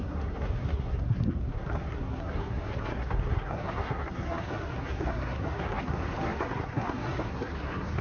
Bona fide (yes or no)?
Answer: no